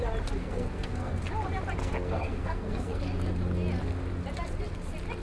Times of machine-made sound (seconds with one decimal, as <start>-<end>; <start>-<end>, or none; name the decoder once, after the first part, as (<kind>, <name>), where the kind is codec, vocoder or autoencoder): 0.4-1.2 (codec, SNAC); 1.8-3.0